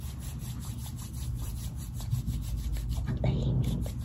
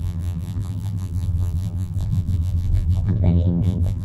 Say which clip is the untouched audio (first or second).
first